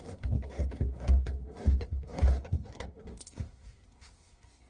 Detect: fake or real fake